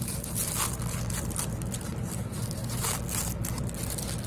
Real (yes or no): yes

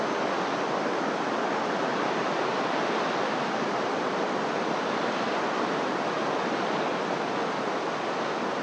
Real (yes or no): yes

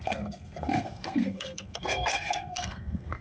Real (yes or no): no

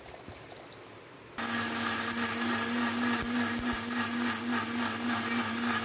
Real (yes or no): yes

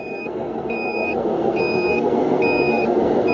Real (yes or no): no